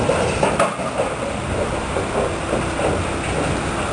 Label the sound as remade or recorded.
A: recorded